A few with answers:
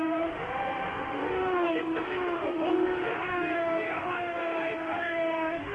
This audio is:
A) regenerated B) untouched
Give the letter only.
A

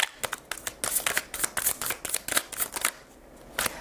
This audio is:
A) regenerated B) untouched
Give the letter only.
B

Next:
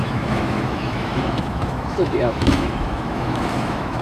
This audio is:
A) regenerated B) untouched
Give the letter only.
A